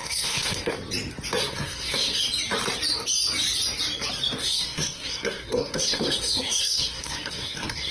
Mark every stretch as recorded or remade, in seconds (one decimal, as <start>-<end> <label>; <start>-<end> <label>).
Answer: 0.0-0.7 remade; 0.7-1.4 recorded; 1.4-2.2 remade; 2.2-4.4 recorded; 4.4-7.9 remade